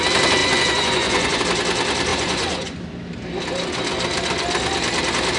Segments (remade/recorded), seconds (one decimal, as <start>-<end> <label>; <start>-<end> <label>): 0.0-0.4 recorded; 0.4-1.4 remade; 1.4-2.1 recorded; 2.1-2.8 remade; 2.8-5.4 recorded